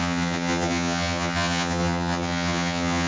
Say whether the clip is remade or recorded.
remade